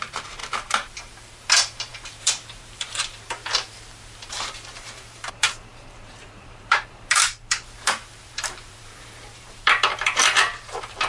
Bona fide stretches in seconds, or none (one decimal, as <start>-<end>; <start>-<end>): none

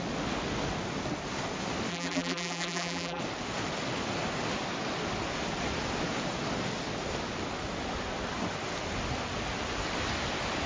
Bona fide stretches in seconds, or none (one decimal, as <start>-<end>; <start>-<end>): 0.0-1.9; 3.2-10.7

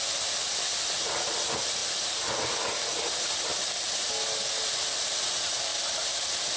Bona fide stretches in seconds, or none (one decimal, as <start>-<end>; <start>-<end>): 0.0-5.7